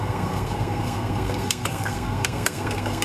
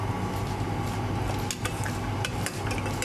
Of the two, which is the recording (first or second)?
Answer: second